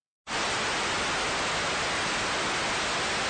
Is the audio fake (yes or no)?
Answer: no